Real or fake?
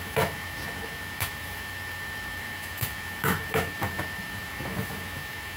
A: fake